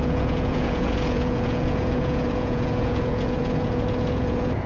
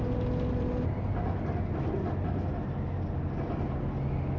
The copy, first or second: first